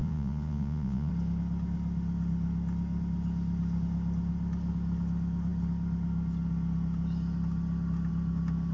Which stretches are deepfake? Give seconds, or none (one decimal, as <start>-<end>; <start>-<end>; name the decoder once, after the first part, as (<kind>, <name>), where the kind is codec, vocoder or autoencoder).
0.0-1.1 (vocoder, Vocos)